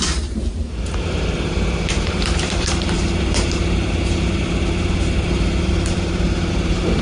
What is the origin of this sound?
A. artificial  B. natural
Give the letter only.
A